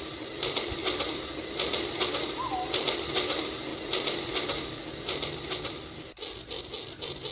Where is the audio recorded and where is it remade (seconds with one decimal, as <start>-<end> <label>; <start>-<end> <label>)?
0.0-7.3 recorded